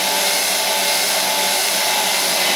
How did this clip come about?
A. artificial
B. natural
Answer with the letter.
B